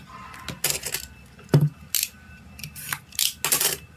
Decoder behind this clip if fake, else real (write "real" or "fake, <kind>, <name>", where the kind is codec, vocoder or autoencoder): real